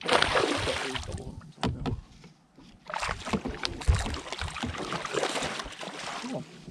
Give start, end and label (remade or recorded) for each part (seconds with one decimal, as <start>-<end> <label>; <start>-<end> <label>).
0.0-6.7 recorded